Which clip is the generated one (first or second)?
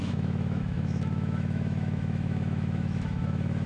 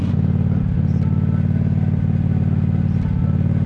first